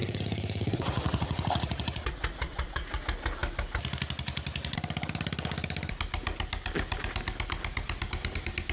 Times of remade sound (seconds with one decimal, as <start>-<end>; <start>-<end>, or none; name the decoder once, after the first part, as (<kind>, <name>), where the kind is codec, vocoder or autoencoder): 0.0-3.0 (vocoder, Vocos)